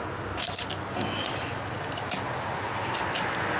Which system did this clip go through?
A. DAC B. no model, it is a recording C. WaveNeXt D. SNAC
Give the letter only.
B